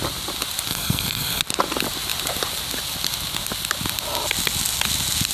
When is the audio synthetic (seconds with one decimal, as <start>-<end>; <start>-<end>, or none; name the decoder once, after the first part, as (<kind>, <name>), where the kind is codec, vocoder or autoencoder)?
0.7-1.4 (codec, SNAC)